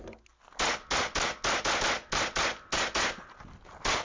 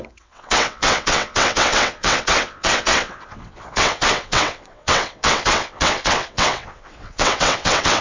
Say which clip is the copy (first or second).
second